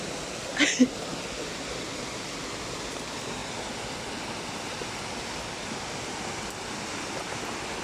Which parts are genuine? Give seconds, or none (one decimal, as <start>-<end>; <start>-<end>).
0.0-7.8